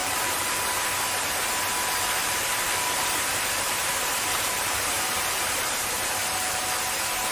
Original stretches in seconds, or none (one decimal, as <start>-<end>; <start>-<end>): 0.5-2.2; 6.6-7.3